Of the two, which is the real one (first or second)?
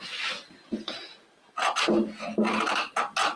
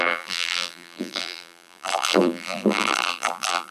first